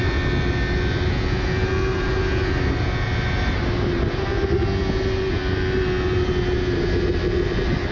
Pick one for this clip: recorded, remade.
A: recorded